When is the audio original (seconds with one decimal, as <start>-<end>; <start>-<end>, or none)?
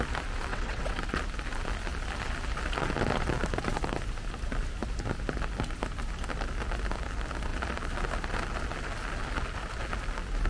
0.0-0.5; 1.2-10.5